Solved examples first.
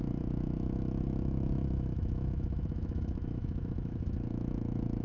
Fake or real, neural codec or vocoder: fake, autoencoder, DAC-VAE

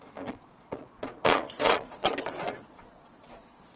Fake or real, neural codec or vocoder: fake, vocoder, Vocos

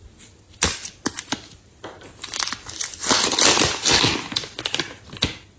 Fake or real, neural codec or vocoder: fake, vocoder, BigVGAN v2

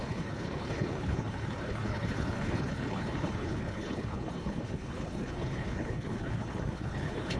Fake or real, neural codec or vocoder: fake, codec, HILCodec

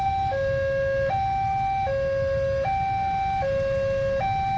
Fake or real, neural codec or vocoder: real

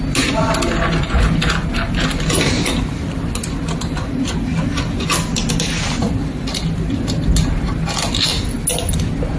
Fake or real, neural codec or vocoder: real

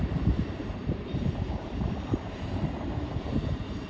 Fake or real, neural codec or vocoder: fake, vocoder, BigVGAN v2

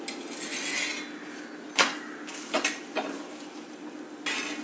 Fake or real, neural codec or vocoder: real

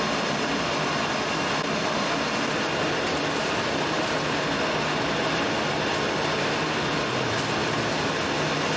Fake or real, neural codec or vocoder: real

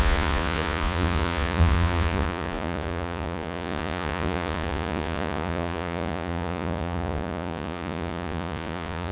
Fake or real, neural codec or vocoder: fake, vocoder, Vocos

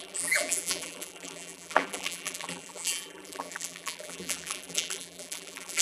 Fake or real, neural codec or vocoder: fake, vocoder, BigVGAN v2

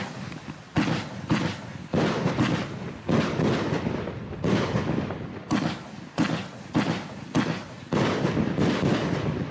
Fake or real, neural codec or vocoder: real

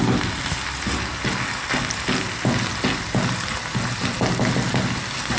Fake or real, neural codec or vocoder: real